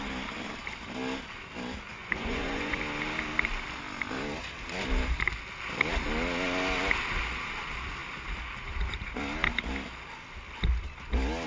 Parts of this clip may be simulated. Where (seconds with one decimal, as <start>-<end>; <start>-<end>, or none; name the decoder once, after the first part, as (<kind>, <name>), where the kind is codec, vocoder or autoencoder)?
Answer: 1.9-2.8 (vocoder, Vocos)